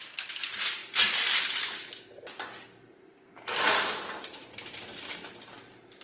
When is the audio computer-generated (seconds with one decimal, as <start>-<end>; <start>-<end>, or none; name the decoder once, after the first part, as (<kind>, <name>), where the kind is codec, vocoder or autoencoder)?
none